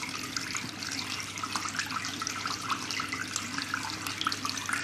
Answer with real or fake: real